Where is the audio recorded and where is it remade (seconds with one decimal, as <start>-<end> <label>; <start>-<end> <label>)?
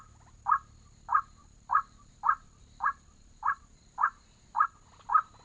0.0-1.4 recorded; 1.4-3.6 remade; 3.6-5.4 recorded